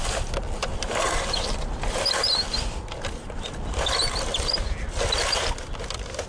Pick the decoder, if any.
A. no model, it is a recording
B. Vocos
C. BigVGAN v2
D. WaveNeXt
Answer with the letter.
A